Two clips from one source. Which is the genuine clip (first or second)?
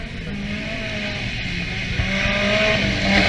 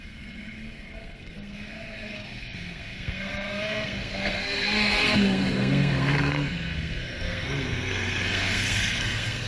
first